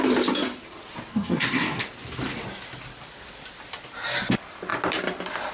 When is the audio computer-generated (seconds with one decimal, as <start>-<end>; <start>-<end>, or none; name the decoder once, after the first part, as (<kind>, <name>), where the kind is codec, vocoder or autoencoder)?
1.1-1.8 (codec, SNAC)